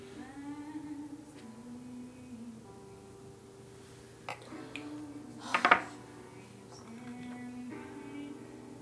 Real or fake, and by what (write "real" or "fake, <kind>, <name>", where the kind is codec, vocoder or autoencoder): real